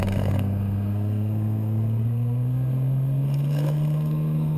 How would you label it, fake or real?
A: fake